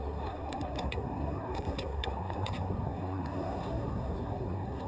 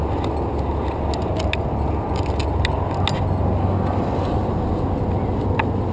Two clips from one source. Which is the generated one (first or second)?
first